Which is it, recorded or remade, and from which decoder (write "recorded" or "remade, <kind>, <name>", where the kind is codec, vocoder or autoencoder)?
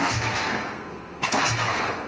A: remade, codec, SNAC